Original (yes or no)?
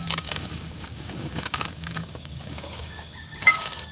no